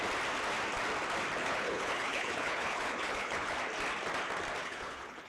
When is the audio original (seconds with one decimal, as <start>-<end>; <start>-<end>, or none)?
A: 0.0-1.4; 3.6-4.6